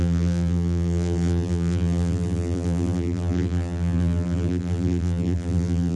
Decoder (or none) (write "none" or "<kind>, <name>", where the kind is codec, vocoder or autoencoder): vocoder, BigVGAN v2